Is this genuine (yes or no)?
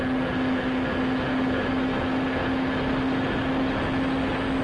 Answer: yes